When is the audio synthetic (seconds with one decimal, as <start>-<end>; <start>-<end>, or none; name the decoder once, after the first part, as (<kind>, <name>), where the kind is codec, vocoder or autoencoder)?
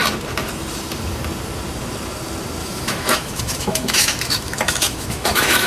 2.6-5.7 (autoencoder, DAC-VAE)